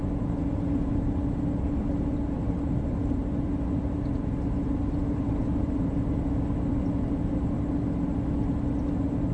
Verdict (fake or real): real